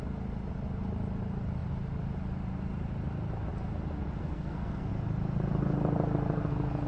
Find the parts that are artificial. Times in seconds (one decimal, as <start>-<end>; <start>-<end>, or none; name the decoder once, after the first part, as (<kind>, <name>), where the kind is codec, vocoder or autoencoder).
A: 4.2-4.9 (codec, SNAC)